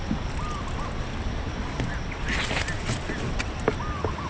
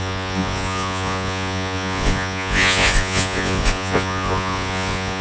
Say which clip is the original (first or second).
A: first